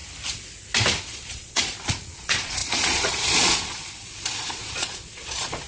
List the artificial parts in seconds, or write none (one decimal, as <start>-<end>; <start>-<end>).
1.0-5.7